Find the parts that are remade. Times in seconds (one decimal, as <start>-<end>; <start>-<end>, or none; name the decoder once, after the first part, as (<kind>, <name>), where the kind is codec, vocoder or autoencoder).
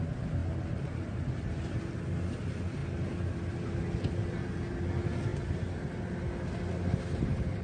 0.4-1.5 (vocoder, BigVGAN v2)